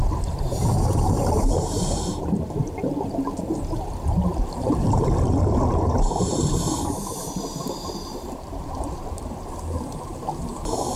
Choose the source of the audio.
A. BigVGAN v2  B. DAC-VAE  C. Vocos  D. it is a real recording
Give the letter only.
A